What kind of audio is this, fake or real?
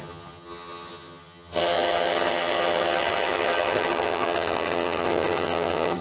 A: fake